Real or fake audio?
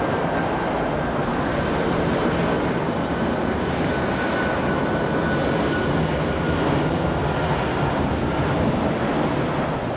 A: real